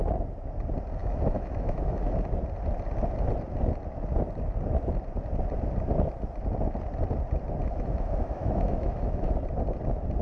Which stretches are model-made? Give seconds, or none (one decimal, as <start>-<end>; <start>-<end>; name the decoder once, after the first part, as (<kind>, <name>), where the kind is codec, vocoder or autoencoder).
1.0-2.2 (autoencoder, DAC-VAE); 7.6-9.3